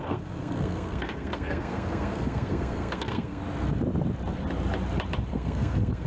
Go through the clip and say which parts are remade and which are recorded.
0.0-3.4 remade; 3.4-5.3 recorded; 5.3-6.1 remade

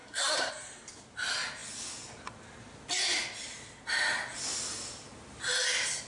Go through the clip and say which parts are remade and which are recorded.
0.0-0.5 remade; 0.5-6.1 recorded

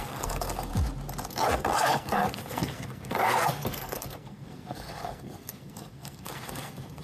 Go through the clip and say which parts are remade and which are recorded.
0.0-0.7 remade; 0.7-1.3 recorded; 1.3-7.0 remade